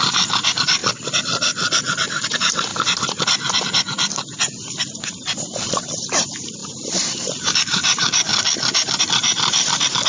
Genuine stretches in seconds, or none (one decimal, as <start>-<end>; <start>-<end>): 0.8-2.3; 2.7-5.6; 8.3-9.0